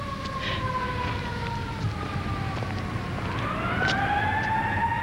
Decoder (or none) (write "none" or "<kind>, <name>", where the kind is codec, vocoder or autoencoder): none